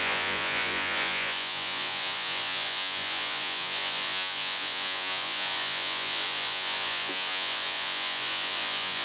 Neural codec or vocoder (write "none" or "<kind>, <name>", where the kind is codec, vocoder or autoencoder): vocoder, Vocos